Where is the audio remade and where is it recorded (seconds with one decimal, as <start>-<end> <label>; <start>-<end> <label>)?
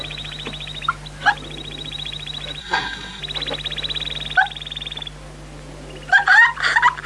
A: 0.0-2.6 recorded; 2.6-3.2 remade; 3.2-7.1 recorded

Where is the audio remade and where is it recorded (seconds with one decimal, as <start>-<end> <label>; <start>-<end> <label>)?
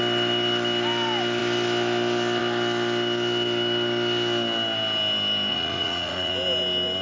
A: 0.0-5.5 recorded; 5.5-6.3 remade; 6.3-7.0 recorded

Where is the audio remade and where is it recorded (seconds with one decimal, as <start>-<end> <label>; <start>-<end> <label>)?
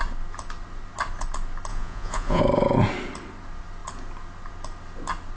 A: 0.0-1.7 recorded; 1.7-2.4 remade; 2.4-5.4 recorded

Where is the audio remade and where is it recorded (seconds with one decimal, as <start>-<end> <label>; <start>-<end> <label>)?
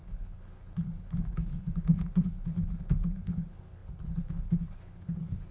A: 0.0-5.5 remade